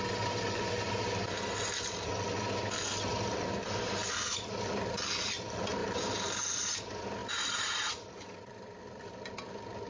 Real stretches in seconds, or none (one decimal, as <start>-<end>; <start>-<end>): 0.0-4.0; 4.7-7.2; 9.1-9.9

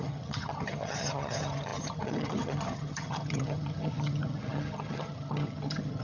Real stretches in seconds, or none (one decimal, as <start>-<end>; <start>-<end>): none

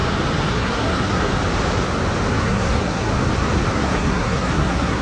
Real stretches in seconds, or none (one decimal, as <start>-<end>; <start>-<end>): 0.0-0.5; 1.3-2.3; 3.1-3.7

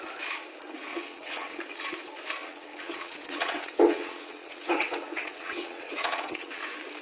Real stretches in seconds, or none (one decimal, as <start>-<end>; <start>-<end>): 0.0-0.9; 1.6-2.4; 6.6-7.0

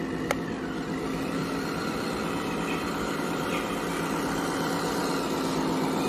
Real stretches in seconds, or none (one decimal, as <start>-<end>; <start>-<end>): 0.0-1.4; 5.1-6.1

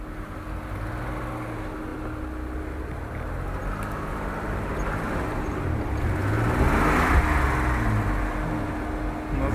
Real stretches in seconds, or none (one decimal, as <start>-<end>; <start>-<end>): 0.0-5.5; 6.1-9.5